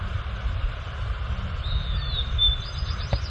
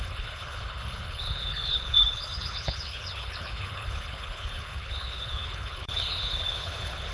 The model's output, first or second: second